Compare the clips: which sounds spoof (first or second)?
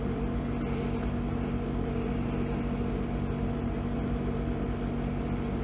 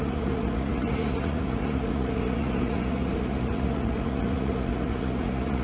second